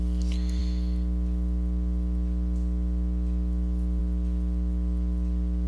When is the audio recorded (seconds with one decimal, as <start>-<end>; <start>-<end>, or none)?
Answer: 0.0-5.7